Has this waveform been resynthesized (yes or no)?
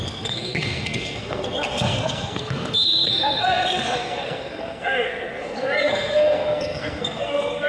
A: yes